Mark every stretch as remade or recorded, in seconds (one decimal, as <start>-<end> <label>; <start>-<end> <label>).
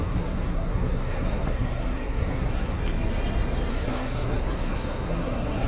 0.0-2.8 remade; 2.8-3.7 recorded; 3.7-5.7 remade